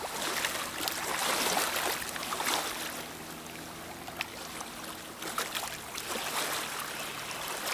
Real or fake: real